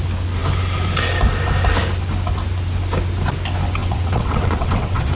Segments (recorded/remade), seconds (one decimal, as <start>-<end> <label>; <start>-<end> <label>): 0.0-3.8 recorded; 3.8-5.1 remade